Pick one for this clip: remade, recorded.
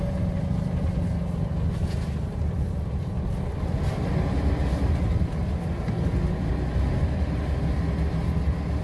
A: recorded